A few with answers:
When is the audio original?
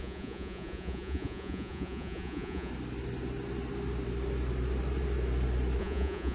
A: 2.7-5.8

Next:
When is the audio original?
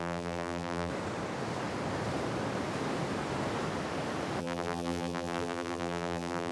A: 0.9-4.4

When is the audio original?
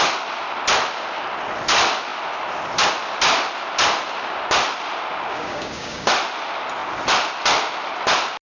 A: 0.0-5.3; 6.1-8.6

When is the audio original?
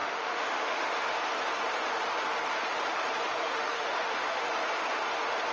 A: 0.9-3.4; 4.4-5.5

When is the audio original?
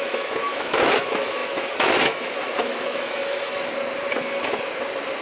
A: 3.6-5.2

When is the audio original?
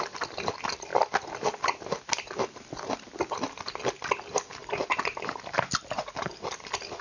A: 0.0-7.0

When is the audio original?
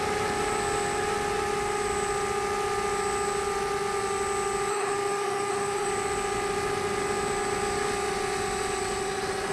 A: 0.0-4.7; 5.9-9.5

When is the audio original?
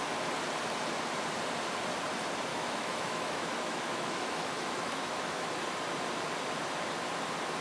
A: 0.0-2.5; 5.5-7.6